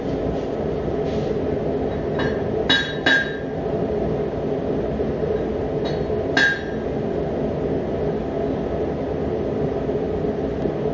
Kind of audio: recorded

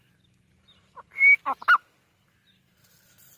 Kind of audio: recorded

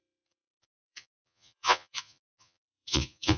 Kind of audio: remade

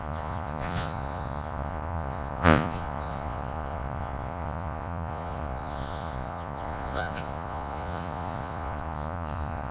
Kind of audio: remade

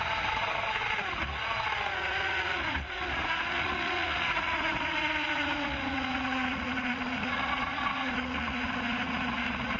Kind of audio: remade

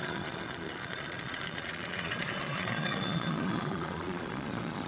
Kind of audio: remade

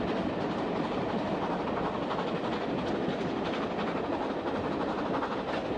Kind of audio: recorded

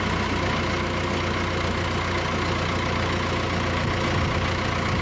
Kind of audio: recorded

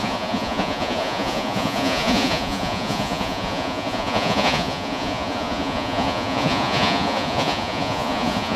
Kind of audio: remade